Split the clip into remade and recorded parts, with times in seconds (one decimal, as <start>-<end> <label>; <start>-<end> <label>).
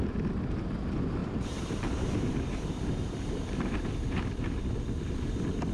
0.0-1.2 recorded; 1.2-4.6 remade; 4.6-5.7 recorded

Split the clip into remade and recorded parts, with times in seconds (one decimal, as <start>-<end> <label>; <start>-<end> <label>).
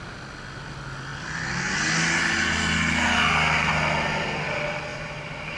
0.0-4.9 recorded; 4.9-5.6 remade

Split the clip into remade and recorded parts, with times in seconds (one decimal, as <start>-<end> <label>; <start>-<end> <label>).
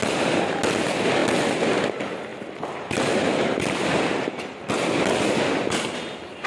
0.0-2.3 recorded; 2.3-4.7 remade; 4.7-6.5 recorded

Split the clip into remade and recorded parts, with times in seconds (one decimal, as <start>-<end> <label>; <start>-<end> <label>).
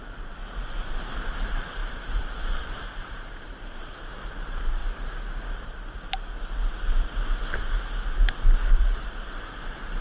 0.0-0.4 remade; 0.4-1.0 recorded; 1.0-4.8 remade; 4.8-8.7 recorded; 8.7-10.0 remade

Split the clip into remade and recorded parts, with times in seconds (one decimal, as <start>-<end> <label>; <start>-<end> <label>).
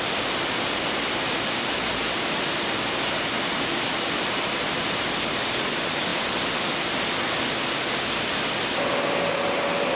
0.0-6.1 remade; 6.1-10.0 recorded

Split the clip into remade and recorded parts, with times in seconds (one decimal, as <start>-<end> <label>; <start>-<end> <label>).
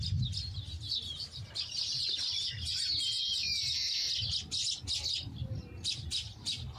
0.0-6.8 recorded